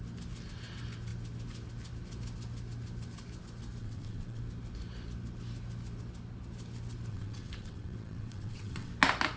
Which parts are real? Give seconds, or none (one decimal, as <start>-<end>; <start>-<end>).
0.0-3.8; 4.4-7.1; 8.9-9.4